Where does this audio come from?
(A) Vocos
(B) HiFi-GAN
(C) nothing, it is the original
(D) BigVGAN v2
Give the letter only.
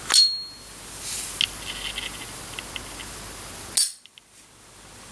C